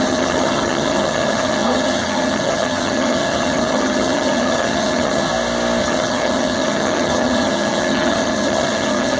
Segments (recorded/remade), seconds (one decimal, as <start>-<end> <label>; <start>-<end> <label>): 0.0-5.3 remade; 5.3-5.8 recorded; 5.8-9.2 remade